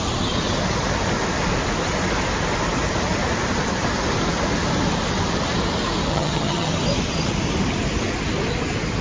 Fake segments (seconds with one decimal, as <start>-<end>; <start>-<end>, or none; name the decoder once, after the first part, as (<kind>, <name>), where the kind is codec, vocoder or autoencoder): 6.1-6.7 (vocoder, HiFi-GAN)